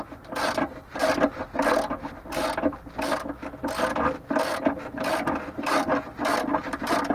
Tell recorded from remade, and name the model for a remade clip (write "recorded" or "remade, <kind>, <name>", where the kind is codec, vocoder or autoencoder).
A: recorded